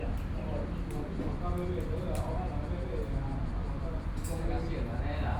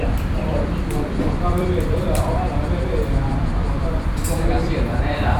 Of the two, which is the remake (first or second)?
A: second